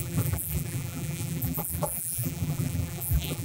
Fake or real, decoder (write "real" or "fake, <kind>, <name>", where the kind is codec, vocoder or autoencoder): fake, vocoder, BigVGAN v2